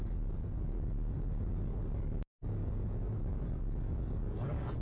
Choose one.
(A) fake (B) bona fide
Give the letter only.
B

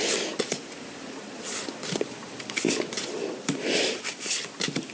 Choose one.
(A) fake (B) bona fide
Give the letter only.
A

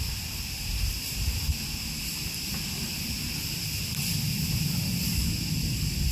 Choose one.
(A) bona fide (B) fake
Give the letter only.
A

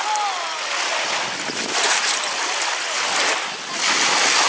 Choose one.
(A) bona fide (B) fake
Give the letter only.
A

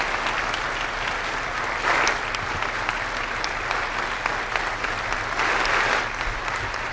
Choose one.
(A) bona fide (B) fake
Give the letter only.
A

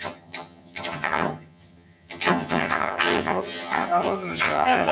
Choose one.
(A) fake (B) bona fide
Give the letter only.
A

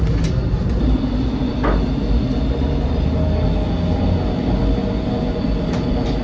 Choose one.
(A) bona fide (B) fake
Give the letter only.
A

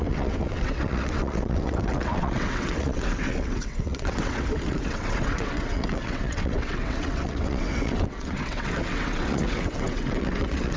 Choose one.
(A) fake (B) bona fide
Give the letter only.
A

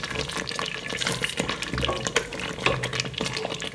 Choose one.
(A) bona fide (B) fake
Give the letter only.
A